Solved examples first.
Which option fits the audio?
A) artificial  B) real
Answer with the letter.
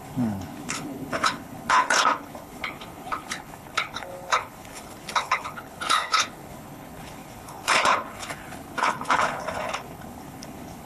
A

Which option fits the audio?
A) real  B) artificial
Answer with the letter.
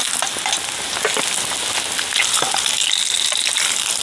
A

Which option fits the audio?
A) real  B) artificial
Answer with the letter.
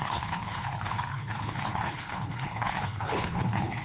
B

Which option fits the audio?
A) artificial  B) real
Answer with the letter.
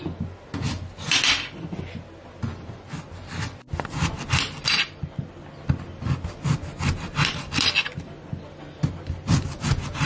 B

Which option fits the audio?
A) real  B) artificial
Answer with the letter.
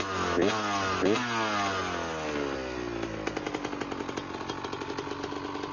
A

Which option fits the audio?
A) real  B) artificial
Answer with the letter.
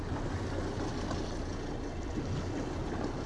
A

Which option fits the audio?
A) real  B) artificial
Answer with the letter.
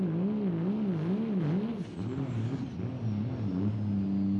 A